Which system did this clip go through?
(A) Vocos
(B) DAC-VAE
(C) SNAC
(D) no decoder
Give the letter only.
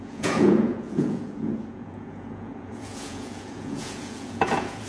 A